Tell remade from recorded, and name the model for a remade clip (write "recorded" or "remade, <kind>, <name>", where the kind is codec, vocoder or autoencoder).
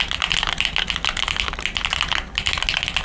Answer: recorded